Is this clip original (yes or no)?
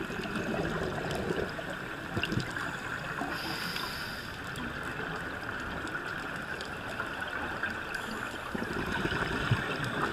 yes